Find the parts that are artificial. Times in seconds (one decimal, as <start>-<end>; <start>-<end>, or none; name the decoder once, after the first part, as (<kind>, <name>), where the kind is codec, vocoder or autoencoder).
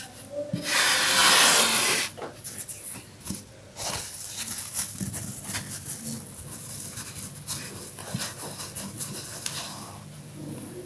none